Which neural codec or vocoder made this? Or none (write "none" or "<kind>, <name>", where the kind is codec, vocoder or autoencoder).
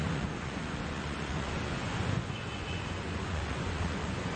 vocoder, Vocos